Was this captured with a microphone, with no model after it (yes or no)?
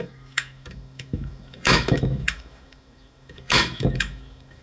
no